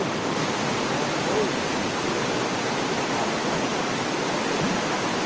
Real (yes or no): yes